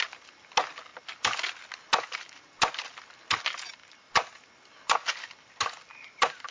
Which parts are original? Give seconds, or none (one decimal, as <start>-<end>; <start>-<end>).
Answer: 0.0-6.5